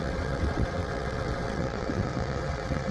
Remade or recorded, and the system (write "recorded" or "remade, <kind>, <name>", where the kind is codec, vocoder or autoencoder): remade, vocoder, WaveNeXt